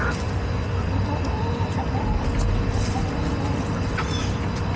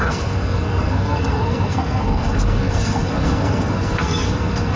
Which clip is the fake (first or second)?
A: second